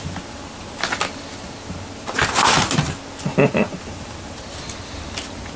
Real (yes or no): yes